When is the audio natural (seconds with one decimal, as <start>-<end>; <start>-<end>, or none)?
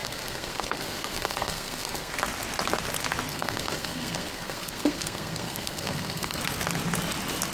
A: 2.1-3.3; 6.4-7.5